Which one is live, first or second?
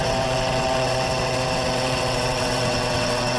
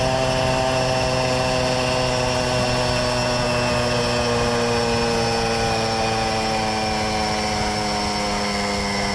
second